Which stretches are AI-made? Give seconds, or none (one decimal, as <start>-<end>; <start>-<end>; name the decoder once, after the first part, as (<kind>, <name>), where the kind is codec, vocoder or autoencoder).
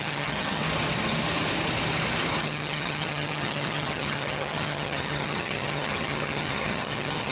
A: 0.0-0.6 (vocoder, HiFi-GAN); 2.4-7.3